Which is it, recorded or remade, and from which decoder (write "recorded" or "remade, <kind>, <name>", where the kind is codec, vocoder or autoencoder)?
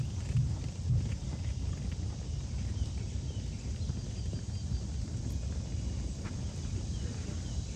recorded